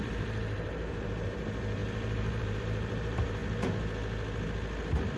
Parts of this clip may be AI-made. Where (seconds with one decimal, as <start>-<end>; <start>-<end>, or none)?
0.0-3.4